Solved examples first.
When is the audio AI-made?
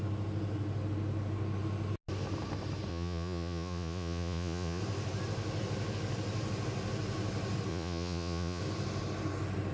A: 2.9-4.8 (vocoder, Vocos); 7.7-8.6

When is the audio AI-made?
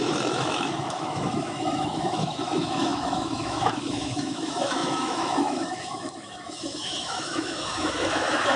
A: 0.0-8.6 (autoencoder, DAC-VAE)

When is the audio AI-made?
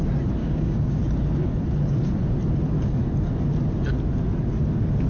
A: 0.4-1.0 (codec, DAC)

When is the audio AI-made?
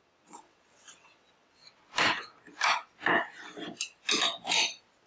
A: 0.0-1.6 (vocoder, WaveNeXt)